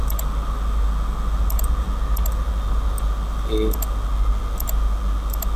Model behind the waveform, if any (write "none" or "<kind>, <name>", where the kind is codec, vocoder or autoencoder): none